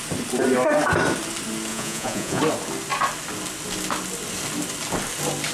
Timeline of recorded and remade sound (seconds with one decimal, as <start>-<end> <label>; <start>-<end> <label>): 0.0-1.7 recorded; 1.7-2.4 remade; 2.4-5.5 recorded